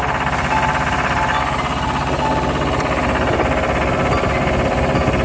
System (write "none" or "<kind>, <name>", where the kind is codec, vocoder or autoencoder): none